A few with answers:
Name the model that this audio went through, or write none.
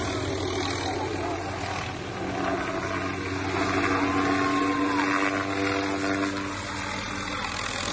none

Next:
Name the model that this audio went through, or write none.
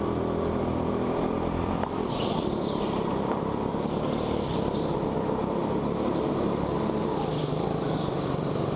vocoder, BigVGAN v2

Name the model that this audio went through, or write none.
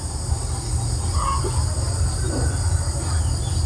none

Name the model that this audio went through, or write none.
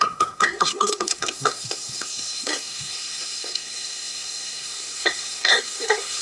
codec, SNAC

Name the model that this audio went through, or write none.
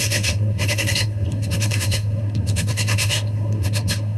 codec, SNAC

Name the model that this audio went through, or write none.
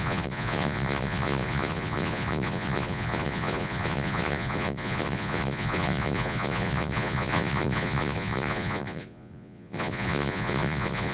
vocoder, Vocos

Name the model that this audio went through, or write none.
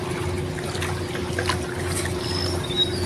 none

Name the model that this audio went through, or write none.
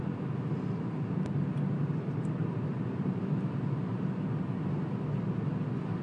none